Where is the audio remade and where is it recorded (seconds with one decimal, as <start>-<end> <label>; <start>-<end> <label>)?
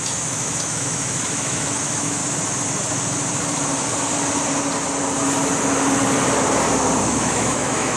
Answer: 0.0-2.2 remade; 2.2-7.0 recorded; 7.0-8.0 remade